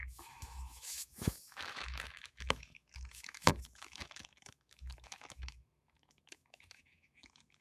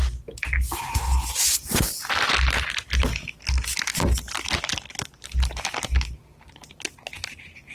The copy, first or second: first